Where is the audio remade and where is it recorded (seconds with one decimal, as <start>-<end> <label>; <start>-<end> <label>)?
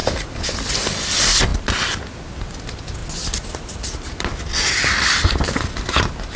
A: 0.0-1.5 recorded; 1.5-2.3 remade; 2.3-6.4 recorded